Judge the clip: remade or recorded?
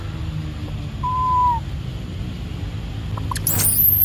recorded